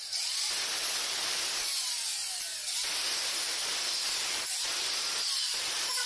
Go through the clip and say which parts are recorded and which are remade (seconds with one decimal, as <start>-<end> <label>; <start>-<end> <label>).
0.0-6.1 recorded